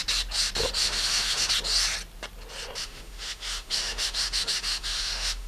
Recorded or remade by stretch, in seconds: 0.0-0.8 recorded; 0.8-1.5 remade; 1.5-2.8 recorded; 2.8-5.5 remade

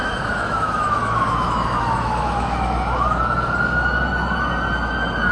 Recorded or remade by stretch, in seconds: 0.0-3.2 remade; 3.2-5.3 recorded